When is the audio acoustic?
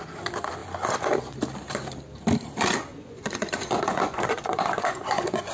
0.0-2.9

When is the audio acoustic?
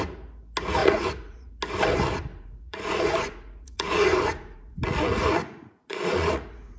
0.0-0.8; 1.5-2.3; 4.8-5.4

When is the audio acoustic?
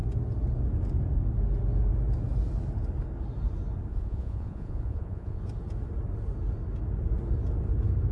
0.0-3.9; 5.4-8.1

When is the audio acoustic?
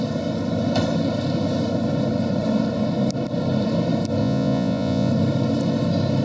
0.0-4.2; 5.1-6.2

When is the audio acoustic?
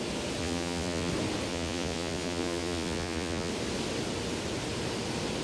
0.0-0.4; 1.1-1.5; 3.5-5.4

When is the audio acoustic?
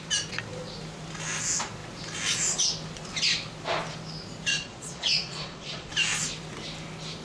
0.0-4.5; 5.9-7.2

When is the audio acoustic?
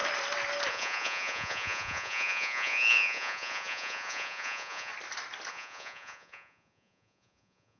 0.0-0.7; 4.9-5.5